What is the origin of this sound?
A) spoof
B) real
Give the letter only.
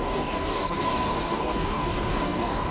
A